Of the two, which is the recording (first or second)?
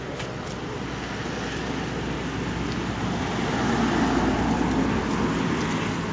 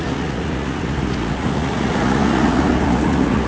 first